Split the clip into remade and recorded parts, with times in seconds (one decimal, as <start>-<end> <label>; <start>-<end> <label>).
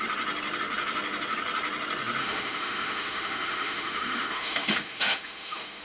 0.0-2.2 recorded; 2.2-5.8 remade